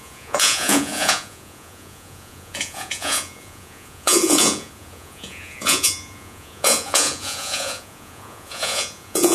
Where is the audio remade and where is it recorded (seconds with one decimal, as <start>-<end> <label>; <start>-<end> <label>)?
0.0-9.3 remade